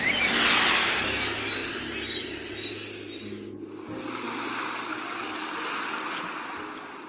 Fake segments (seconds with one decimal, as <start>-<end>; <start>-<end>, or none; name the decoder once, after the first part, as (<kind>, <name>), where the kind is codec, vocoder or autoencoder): none